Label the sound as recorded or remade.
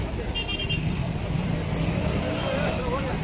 recorded